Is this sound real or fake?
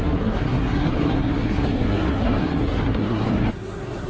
fake